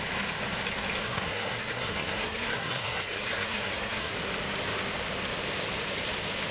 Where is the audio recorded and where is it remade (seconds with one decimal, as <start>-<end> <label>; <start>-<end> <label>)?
0.0-1.0 recorded; 1.0-4.1 remade; 4.1-6.5 recorded